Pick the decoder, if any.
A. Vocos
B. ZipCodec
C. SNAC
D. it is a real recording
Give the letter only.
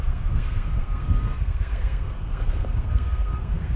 C